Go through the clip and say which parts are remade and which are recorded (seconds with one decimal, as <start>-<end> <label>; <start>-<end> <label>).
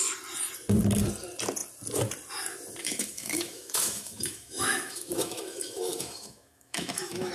0.0-2.8 recorded; 2.8-7.3 remade